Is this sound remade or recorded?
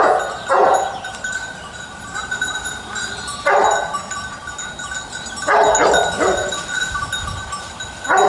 recorded